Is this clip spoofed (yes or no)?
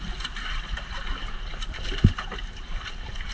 no